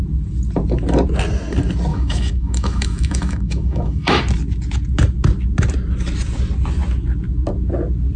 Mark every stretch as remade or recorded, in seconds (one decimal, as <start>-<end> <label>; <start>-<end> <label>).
0.0-1.9 recorded; 1.9-4.2 remade; 4.2-8.2 recorded